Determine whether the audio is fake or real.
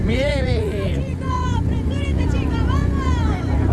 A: fake